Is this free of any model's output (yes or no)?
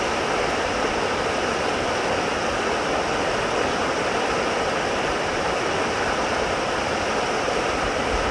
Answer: yes